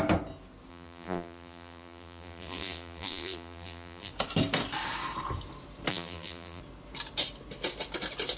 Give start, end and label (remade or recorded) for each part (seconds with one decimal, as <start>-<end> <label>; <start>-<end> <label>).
0.0-0.7 recorded; 0.7-4.1 remade; 4.1-5.9 recorded; 5.9-6.6 remade; 6.6-8.4 recorded